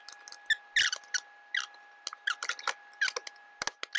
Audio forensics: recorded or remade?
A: recorded